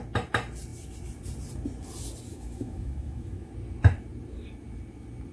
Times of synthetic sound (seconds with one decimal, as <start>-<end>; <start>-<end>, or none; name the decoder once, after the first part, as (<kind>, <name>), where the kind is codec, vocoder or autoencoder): 2.3-3.5 (autoencoder, DAC-VAE)